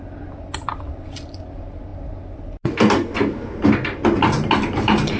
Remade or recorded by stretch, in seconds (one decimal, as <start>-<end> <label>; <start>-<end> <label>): 0.0-5.2 recorded